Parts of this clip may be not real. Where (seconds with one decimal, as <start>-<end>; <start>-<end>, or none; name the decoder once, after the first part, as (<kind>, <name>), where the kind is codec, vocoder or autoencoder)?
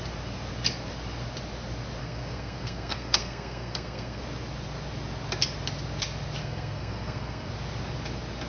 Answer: 2.0-4.2 (codec, SNAC); 6.4-7.5